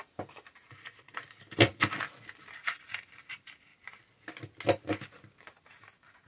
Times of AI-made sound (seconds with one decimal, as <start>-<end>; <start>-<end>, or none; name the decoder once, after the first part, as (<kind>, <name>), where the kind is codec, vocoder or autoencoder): 0.0-1.7 (vocoder, BigVGAN v2); 2.5-3.7; 5.4-6.3